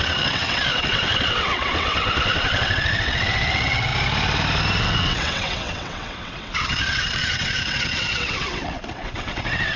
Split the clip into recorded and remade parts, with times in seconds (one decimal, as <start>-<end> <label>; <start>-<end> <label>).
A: 0.0-3.9 remade; 3.9-4.8 recorded; 4.8-9.8 remade